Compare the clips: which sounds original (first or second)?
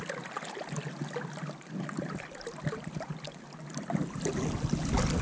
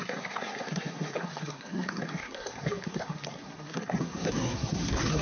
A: first